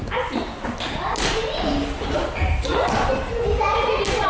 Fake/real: real